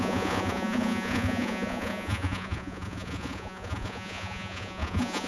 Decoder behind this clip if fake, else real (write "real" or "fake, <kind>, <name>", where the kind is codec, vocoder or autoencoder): fake, vocoder, Vocos